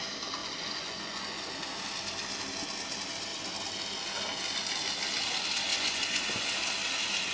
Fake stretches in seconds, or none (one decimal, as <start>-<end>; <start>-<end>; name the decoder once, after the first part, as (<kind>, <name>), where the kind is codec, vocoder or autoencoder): 0.4-1.5 (vocoder, Vocos); 5.7-6.5